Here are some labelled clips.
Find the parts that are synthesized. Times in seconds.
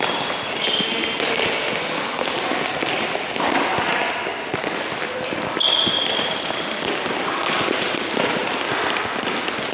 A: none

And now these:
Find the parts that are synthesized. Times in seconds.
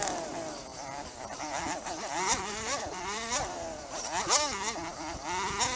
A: 0.7-4.0 (vocoder, BigVGAN v2)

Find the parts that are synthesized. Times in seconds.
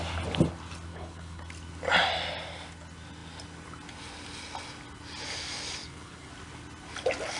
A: 0.9-1.4 (codec, HILCodec); 5.8-6.3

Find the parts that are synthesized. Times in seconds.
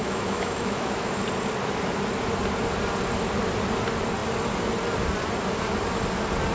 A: 0.0-1.2 (autoencoder, DAC-VAE)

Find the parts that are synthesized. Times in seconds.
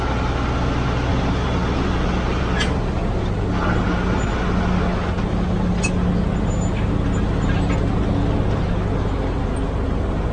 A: none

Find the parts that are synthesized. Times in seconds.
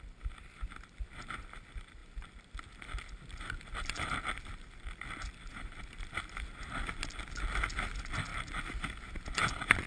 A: none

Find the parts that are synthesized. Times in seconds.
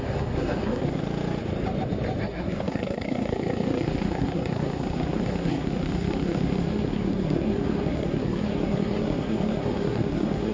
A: 0.0-1.0 (codec, SNAC); 2.2-10.5